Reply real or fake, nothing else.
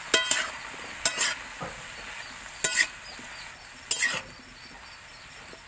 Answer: real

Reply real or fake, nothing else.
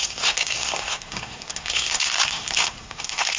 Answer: fake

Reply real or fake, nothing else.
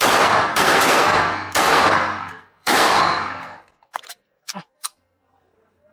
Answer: fake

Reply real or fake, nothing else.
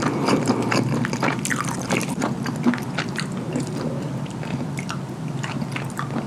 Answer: real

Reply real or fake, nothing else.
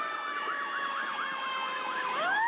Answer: fake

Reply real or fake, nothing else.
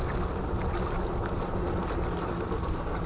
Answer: real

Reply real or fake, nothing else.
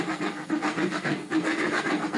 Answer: fake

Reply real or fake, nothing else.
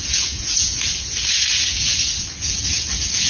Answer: fake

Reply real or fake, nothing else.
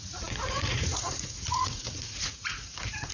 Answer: fake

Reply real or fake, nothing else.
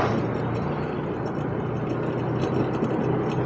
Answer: real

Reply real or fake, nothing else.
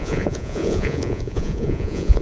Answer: fake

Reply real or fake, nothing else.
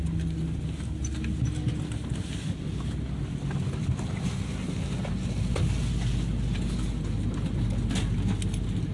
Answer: real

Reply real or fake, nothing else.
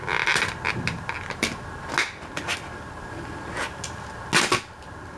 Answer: real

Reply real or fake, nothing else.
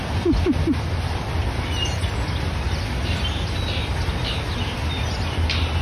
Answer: real